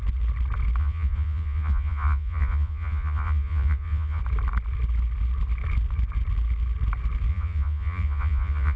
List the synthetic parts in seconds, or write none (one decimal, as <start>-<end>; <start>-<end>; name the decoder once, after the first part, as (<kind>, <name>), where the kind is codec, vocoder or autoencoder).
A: 0.8-4.2 (vocoder, Vocos); 7.3-8.8